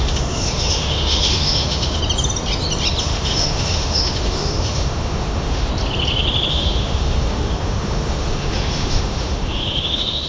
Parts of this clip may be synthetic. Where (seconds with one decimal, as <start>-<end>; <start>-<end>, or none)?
0.0-2.0; 3.0-5.7; 6.5-10.3

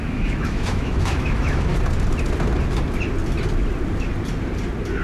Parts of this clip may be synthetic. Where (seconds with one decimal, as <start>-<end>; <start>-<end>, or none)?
0.0-1.7

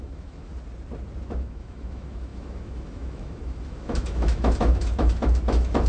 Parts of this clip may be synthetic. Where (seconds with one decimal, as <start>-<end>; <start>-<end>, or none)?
0.0-0.5; 1.3-5.9

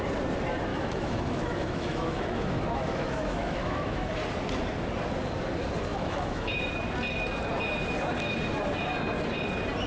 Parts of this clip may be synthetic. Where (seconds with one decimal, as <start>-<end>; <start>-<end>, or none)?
0.7-4.1; 5.9-6.6

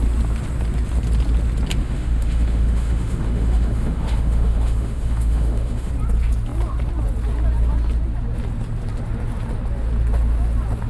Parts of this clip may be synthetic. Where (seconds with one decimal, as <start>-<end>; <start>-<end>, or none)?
1.8-5.9

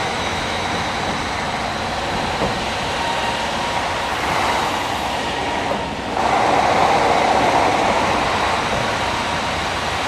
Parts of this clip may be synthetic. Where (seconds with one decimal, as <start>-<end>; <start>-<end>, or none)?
0.0-0.7

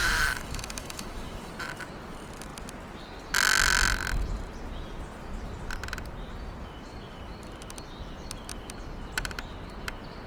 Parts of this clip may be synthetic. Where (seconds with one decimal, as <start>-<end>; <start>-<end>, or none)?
0.0-1.5